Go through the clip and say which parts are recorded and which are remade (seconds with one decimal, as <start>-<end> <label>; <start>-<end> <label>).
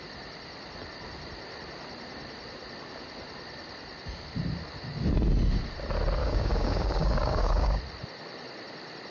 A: 0.0-6.2 recorded; 6.2-7.8 remade; 7.8-9.1 recorded